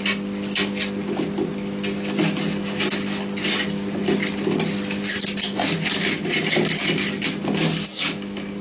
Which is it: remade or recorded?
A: recorded